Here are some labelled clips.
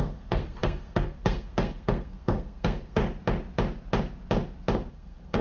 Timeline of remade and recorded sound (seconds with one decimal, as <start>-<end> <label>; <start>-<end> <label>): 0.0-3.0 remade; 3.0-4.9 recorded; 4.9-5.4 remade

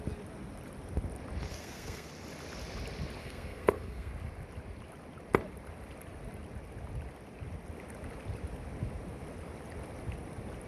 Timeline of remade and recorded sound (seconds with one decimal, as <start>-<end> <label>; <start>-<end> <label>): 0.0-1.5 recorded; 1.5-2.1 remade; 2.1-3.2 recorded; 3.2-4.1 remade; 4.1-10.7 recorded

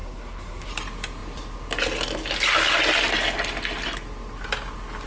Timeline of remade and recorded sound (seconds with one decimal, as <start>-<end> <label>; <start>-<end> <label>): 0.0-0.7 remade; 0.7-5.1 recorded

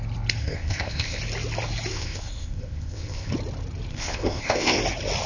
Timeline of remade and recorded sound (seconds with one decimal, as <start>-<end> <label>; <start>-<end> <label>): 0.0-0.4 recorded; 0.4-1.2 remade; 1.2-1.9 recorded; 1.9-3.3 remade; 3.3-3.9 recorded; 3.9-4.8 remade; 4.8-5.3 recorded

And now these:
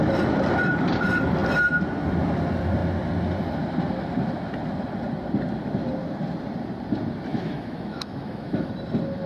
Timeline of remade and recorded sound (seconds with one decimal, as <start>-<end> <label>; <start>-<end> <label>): 0.0-7.3 recorded; 7.3-8.7 remade; 8.7-9.3 recorded

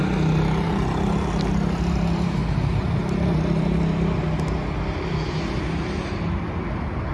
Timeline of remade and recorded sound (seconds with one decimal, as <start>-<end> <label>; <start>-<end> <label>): 0.0-7.1 recorded

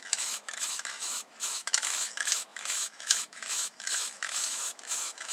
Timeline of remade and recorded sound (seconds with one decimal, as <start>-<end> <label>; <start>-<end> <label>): 0.0-5.3 remade

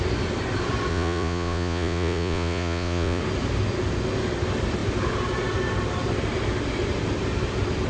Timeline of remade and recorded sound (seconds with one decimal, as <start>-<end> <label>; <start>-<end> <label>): 0.0-0.9 recorded; 0.9-3.2 remade; 3.2-7.9 recorded